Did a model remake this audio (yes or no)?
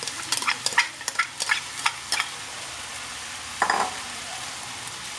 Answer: yes